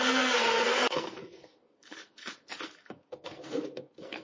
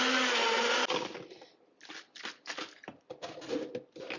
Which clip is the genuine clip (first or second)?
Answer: second